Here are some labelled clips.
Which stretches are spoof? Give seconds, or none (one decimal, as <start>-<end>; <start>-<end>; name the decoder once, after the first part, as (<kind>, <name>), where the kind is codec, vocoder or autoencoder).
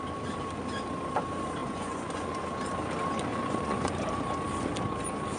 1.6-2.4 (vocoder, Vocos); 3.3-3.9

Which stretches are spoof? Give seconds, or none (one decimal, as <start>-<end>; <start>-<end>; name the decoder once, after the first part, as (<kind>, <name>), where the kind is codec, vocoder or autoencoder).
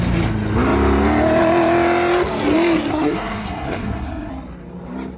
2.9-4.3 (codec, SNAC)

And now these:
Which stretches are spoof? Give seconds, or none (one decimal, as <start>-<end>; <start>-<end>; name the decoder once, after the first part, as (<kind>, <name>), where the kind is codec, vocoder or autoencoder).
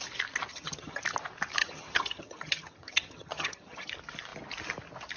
0.5-1.0 (vocoder, HiFi-GAN); 1.6-3.9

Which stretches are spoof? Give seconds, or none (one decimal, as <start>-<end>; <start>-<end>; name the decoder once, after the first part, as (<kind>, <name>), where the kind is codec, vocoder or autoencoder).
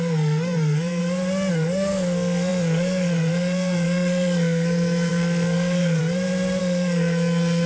0.0-1.0 (codec, SNAC); 1.5-6.0; 6.6-7.7